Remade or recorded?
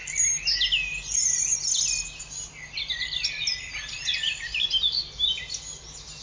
recorded